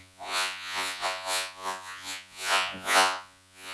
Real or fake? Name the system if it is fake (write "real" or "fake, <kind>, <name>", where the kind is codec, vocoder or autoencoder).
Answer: fake, vocoder, Vocos